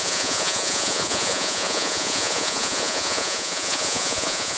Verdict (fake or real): fake